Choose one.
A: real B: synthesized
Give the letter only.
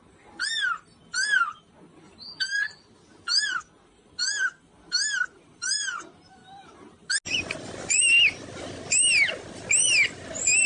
A